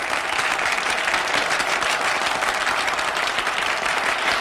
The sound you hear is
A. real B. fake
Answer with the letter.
A